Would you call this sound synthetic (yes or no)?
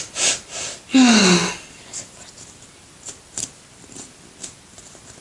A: no